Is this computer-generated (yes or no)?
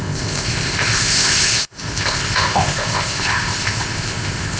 yes